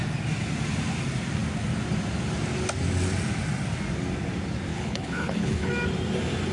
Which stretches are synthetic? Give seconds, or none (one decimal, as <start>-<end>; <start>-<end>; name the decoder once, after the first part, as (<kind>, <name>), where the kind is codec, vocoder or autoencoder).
4.7-5.7 (codec, HILCodec)